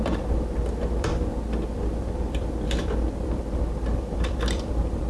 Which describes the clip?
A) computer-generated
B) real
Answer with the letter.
A